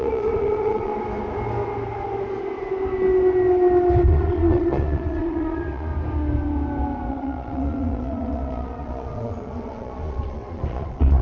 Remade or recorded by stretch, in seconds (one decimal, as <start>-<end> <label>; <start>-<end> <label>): 0.0-0.9 remade; 0.9-4.1 recorded; 4.1-5.9 remade; 5.9-7.1 recorded; 7.1-11.2 remade